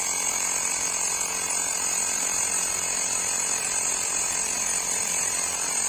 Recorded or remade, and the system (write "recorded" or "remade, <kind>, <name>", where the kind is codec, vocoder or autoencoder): remade, vocoder, BigVGAN v2